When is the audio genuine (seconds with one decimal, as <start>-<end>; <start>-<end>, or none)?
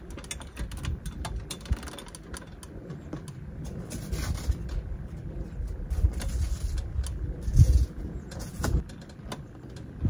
0.0-7.5; 8.8-10.1